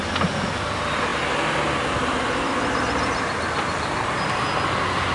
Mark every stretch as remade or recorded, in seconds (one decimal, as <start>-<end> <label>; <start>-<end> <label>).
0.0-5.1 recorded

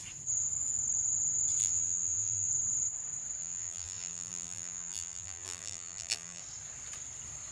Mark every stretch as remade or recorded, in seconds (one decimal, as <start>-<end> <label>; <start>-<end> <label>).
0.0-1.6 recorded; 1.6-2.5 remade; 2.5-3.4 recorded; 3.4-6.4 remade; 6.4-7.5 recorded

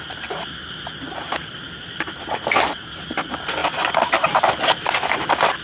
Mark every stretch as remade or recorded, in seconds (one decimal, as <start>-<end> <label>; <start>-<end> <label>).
0.0-5.6 recorded

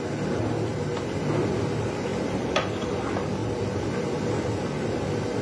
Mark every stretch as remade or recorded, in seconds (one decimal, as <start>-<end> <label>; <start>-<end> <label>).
0.0-0.7 recorded; 0.7-1.2 remade; 1.2-2.1 recorded; 2.1-2.9 remade; 2.9-3.4 recorded; 3.4-5.0 remade; 5.0-5.4 recorded

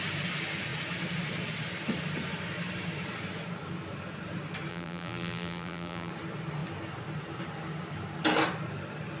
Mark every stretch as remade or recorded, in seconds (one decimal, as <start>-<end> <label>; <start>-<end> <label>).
0.0-4.7 recorded; 4.7-6.1 remade; 6.1-9.2 recorded

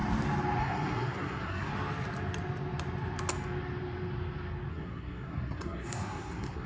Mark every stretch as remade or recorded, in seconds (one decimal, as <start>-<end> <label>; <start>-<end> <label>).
0.0-0.6 recorded; 0.6-1.7 remade; 1.7-4.7 recorded; 4.7-6.7 remade